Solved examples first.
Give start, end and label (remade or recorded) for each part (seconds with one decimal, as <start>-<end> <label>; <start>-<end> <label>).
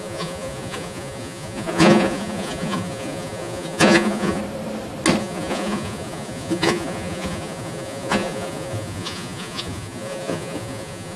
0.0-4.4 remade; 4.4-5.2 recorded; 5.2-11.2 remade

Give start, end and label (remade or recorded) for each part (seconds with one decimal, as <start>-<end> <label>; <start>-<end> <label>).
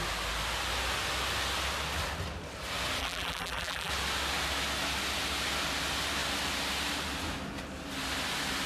0.0-3.0 recorded; 3.0-3.9 remade; 3.9-8.7 recorded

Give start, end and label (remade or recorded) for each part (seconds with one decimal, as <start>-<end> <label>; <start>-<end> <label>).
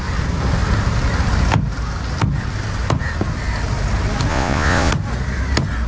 0.0-4.3 recorded; 4.3-4.9 remade; 4.9-5.9 recorded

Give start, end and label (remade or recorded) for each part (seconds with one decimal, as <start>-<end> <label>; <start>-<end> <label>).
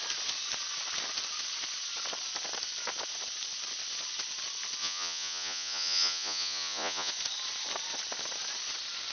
0.0-4.8 recorded; 4.8-7.1 remade; 7.1-9.1 recorded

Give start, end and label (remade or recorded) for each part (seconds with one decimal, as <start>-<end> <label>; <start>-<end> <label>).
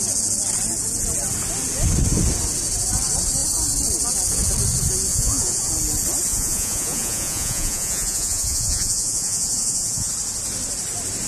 0.0-5.1 recorded; 5.1-5.7 remade; 5.7-6.3 recorded; 6.3-10.1 remade; 10.1-11.3 recorded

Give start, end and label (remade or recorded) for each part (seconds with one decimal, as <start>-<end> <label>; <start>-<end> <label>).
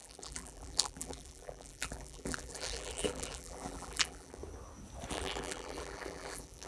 0.0-4.4 remade; 4.4-5.1 recorded; 5.1-6.7 remade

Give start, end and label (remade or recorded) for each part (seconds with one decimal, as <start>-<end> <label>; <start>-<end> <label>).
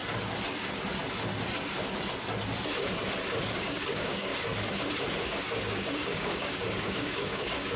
0.0-3.5 recorded; 3.5-4.3 remade; 4.3-5.2 recorded; 5.2-7.8 remade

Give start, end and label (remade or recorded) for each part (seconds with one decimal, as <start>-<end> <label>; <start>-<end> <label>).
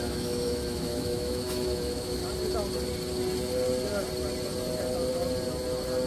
0.0-2.2 remade; 2.2-6.1 recorded